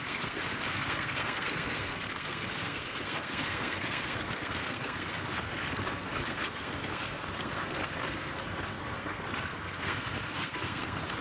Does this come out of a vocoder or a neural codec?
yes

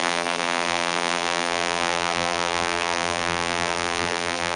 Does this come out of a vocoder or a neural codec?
yes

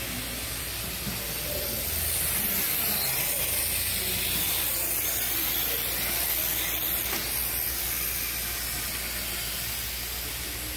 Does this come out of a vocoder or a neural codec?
no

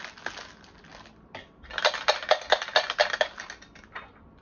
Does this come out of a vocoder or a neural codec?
no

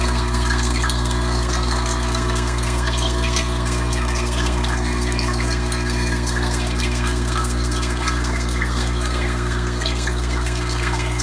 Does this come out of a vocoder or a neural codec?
yes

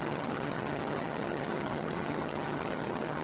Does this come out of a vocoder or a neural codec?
yes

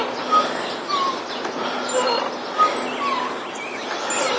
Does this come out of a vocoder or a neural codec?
no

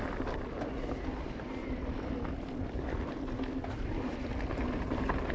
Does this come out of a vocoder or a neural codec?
no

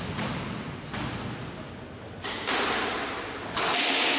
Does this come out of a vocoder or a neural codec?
no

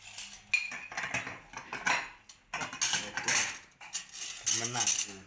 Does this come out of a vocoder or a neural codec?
no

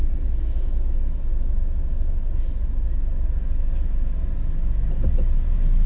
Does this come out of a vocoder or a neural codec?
no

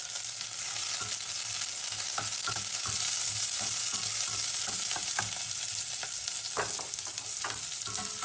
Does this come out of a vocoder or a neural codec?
no